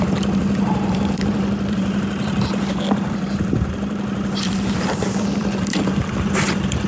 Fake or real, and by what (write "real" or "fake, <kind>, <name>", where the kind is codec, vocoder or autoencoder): fake, vocoder, BigVGAN v2